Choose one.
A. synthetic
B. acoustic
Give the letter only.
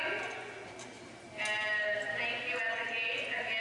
B